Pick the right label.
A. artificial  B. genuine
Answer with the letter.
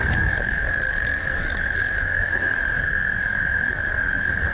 A